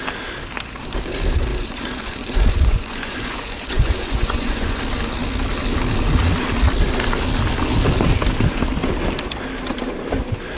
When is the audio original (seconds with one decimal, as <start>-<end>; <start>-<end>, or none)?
0.0-1.5; 4.8-10.6